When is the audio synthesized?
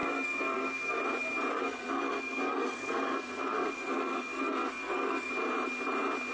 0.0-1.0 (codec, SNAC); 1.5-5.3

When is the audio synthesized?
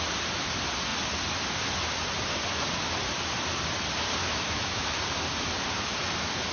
4.2-5.0 (autoencoder, DAC-VAE)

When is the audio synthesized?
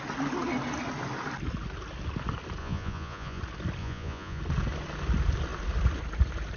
2.6-3.4 (vocoder, Vocos); 3.8-4.4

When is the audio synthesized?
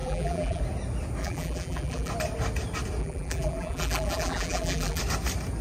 0.0-0.6 (vocoder, BigVGAN v2); 1.2-2.1; 3.0-5.0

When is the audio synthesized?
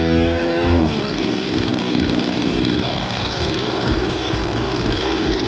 0.0-5.5 (codec, DAC)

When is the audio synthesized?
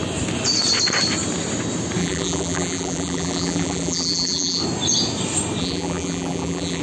2.0-4.6 (vocoder, BigVGAN v2); 5.6-6.8